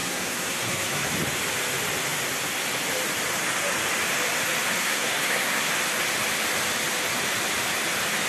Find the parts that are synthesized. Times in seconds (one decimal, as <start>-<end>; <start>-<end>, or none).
0.0-1.1; 4.8-5.7